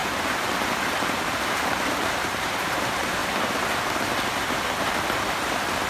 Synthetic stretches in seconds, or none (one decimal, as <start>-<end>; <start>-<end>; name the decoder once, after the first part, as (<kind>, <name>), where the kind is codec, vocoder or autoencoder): 1.4-3.2 (vocoder, BigVGAN v2)

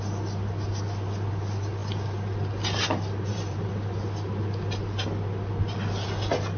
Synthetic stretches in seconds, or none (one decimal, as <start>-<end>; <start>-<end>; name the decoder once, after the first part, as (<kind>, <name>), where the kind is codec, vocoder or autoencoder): 3.3-4.0 (vocoder, BigVGAN v2)

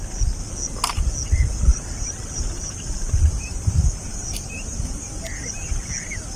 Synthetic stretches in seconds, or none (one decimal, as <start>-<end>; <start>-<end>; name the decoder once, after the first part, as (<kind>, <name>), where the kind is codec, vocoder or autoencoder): 1.7-5.5 (vocoder, BigVGAN v2)